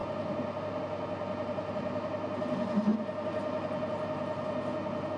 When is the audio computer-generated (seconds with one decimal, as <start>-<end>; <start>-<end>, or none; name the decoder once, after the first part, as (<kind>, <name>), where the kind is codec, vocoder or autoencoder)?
none